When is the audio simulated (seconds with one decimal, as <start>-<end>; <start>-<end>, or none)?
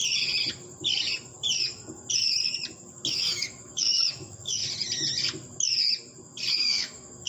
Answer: 3.1-4.6; 6.5-7.3